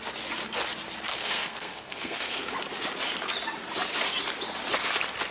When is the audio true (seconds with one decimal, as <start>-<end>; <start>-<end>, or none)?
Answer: 0.0-1.1; 2.5-5.3